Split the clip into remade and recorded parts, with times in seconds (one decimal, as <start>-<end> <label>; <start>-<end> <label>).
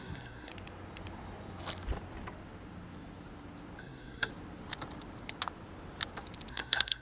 0.0-0.5 remade; 0.5-3.8 recorded; 3.8-4.3 remade; 4.3-6.5 recorded; 6.5-7.0 remade